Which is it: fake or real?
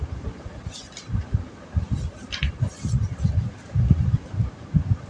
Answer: real